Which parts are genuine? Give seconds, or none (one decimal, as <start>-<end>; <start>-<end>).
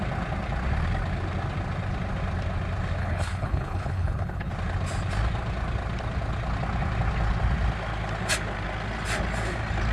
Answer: 0.0-3.0; 4.5-9.9